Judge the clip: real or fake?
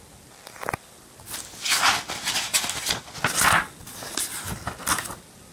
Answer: real